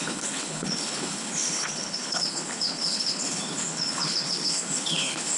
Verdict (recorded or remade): remade